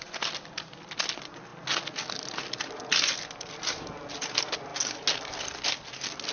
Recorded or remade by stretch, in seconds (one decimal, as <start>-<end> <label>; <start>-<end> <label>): 0.0-6.3 recorded

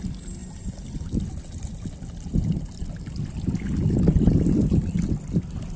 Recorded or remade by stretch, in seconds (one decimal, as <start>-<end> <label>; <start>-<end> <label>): 0.0-5.8 recorded

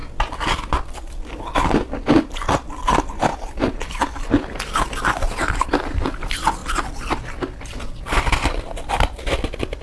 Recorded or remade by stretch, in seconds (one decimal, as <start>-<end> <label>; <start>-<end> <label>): 0.0-9.8 recorded

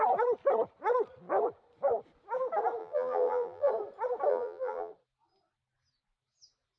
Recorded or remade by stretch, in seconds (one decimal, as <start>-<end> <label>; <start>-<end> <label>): 0.0-2.8 recorded; 2.8-3.7 remade; 3.7-4.3 recorded; 4.3-4.9 remade; 4.9-6.8 recorded

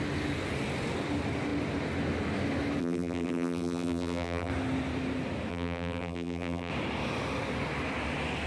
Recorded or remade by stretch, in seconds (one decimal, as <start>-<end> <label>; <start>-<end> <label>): 0.0-2.8 recorded; 2.8-4.5 remade; 4.5-5.5 recorded; 5.5-6.7 remade; 6.7-8.5 recorded

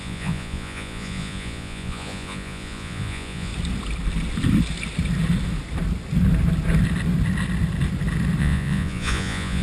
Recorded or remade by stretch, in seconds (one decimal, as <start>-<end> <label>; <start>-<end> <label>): 0.0-3.5 remade; 3.5-8.4 recorded; 8.4-9.6 remade

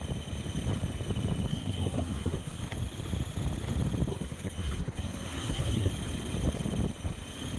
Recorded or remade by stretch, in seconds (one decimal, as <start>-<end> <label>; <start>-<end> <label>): 0.0-1.5 recorded; 1.5-2.6 remade; 2.6-4.1 recorded; 4.1-5.9 remade; 5.9-7.6 recorded

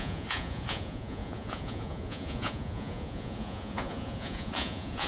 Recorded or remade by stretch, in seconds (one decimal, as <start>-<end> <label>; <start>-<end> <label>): 0.0-5.1 remade